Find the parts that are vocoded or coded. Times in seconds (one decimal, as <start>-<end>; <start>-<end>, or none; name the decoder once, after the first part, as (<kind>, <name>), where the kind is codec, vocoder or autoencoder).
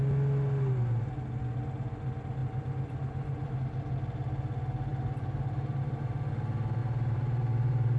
2.4-3.6 (vocoder, BigVGAN v2); 4.9-6.1; 6.8-8.0